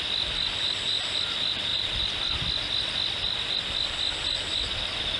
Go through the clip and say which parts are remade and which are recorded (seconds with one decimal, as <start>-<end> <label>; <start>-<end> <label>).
0.0-5.2 recorded